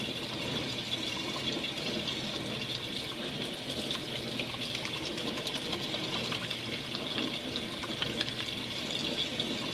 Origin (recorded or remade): recorded